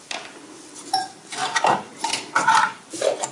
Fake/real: fake